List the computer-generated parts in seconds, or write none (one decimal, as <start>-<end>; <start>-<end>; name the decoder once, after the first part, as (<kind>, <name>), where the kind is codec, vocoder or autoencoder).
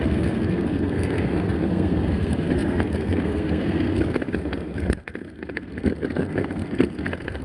0.0-7.4 (codec, SNAC)